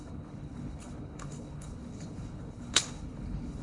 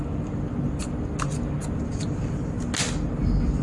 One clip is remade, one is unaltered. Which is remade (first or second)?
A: first